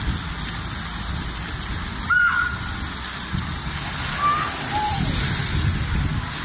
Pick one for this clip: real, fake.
real